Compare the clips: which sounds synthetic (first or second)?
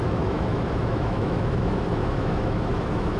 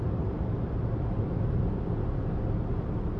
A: first